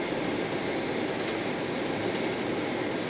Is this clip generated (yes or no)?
no